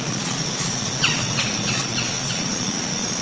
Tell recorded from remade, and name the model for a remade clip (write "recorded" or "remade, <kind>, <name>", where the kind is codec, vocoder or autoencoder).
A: remade, vocoder, Vocos